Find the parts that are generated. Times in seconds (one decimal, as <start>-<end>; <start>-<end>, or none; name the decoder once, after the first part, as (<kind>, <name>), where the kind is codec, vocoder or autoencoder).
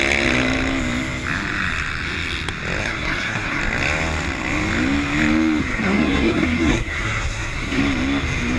2.8-3.6 (codec, SNAC); 5.6-7.8